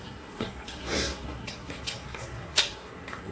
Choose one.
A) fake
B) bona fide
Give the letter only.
A